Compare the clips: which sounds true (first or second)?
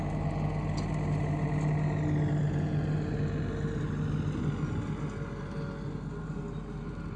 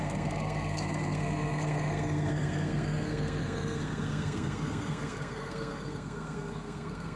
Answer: first